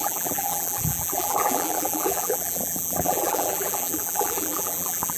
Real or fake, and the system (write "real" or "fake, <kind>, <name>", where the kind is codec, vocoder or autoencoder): fake, vocoder, BigVGAN v2